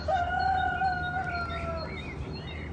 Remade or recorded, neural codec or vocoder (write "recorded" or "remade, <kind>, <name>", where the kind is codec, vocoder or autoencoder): recorded